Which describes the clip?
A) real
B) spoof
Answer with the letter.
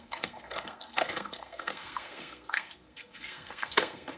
B